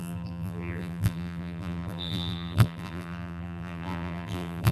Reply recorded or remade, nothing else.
remade